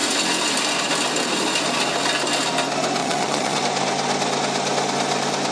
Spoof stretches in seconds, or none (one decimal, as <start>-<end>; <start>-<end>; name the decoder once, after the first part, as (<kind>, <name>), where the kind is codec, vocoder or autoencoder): 3.0-3.6 (vocoder, Vocos)